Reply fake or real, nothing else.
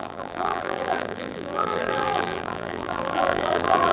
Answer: fake